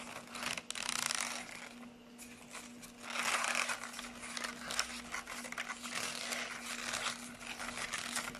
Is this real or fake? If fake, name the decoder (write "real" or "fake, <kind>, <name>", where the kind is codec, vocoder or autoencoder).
real